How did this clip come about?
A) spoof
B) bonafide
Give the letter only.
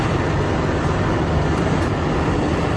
B